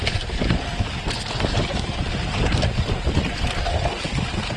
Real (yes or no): yes